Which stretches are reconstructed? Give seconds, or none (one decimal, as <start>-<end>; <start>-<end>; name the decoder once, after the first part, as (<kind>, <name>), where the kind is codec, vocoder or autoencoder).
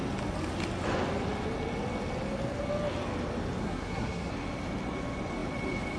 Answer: 3.6-4.3 (codec, SNAC)